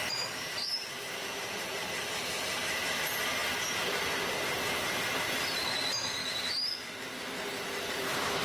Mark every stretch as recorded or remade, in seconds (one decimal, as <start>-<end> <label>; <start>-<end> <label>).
0.0-6.2 remade; 6.2-7.9 recorded; 7.9-8.4 remade